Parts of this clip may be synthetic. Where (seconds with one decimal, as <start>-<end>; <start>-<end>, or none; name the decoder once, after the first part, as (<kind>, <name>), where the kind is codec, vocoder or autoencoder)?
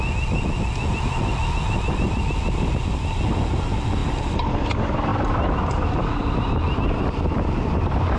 5.1-6.3 (vocoder, BigVGAN v2)